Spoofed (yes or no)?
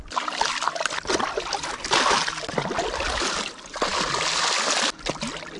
no